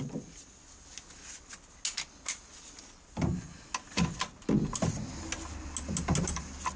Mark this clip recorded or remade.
recorded